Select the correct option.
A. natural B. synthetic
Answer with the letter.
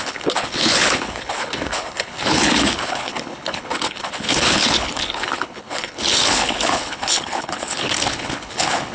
B